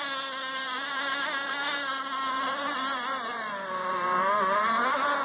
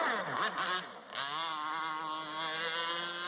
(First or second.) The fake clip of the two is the first